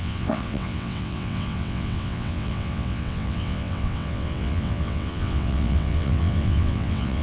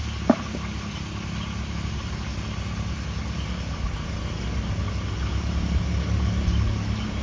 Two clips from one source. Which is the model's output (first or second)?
first